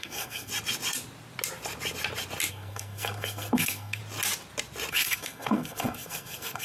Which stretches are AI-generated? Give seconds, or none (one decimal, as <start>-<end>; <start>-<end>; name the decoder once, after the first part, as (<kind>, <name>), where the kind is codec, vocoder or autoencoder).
0.0-0.5 (codec, SNAC); 2.5-4.0; 4.9-6.6

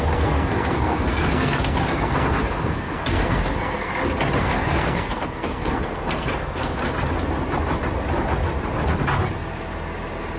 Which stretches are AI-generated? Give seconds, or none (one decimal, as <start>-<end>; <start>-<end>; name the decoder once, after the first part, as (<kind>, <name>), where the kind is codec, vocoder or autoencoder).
0.0-3.9 (codec, SNAC); 4.4-6.8

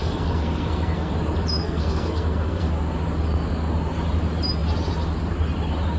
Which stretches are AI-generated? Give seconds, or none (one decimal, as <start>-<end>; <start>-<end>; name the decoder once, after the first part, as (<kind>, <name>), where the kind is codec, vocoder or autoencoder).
0.0-1.1 (codec, SNAC); 1.6-2.7

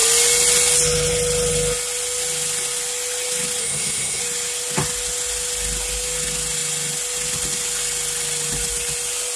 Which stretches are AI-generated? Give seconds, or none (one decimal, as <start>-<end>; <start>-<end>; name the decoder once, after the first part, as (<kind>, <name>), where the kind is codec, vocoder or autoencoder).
3.6-4.2 (codec, SNAC)

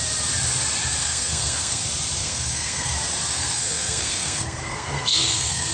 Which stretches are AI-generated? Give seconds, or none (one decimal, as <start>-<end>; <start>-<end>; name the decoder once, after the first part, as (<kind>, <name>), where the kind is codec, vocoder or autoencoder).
1.0-1.8 (codec, SNAC); 2.2-2.9; 3.3-5.7

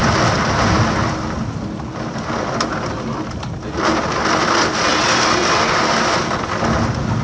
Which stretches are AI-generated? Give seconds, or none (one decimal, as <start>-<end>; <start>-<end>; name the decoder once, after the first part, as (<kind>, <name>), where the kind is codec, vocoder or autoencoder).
none